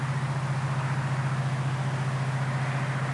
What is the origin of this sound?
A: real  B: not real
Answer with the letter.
A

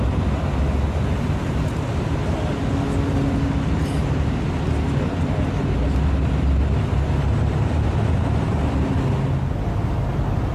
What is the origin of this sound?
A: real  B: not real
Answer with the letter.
A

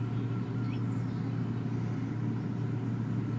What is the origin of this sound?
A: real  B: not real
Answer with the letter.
A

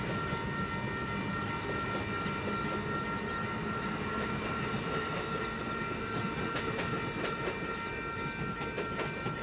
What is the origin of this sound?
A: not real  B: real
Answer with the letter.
B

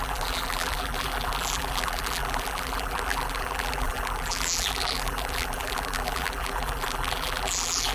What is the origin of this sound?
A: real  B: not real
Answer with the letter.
B